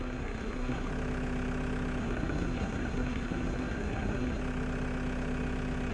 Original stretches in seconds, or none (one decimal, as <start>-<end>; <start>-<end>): 0.9-2.0; 4.4-5.9